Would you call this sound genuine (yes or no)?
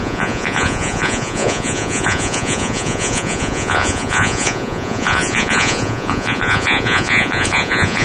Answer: no